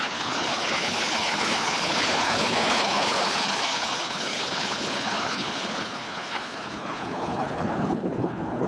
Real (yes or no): no